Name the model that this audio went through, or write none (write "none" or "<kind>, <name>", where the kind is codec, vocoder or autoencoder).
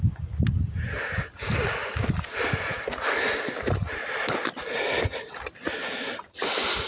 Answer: none